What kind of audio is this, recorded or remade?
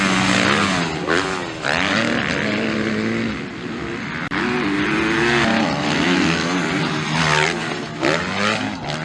recorded